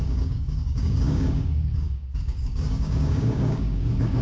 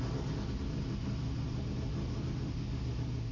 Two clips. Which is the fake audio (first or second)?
first